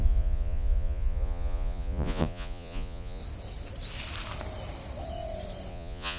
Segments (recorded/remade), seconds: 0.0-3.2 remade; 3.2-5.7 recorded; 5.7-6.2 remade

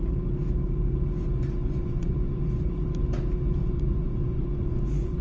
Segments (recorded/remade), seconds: 0.0-1.6 recorded; 1.6-2.4 remade; 2.4-3.6 recorded; 3.6-5.2 remade